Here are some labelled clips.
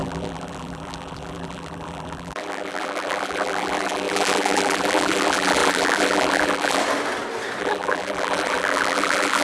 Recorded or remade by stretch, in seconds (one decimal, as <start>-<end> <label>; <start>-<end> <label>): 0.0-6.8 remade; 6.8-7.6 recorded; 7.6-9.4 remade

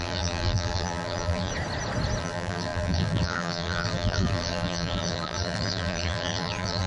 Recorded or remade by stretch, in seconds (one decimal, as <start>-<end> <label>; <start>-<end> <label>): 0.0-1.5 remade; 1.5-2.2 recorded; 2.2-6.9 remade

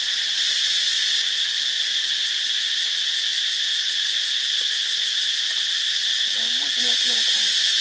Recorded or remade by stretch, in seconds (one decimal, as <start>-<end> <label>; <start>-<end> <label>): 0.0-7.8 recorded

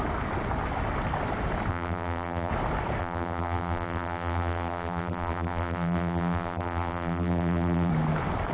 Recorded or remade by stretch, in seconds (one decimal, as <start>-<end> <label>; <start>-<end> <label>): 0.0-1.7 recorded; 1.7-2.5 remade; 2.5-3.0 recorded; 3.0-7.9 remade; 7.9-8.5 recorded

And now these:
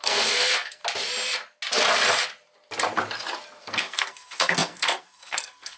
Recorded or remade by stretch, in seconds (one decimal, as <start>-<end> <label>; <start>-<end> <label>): 0.0-0.8 remade; 0.8-3.6 recorded; 3.6-5.8 remade